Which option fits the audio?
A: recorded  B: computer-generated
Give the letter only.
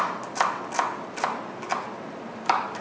A